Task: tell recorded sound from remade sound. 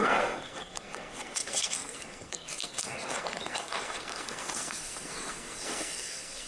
remade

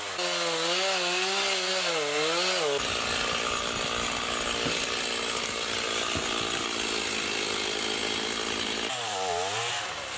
recorded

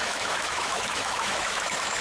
remade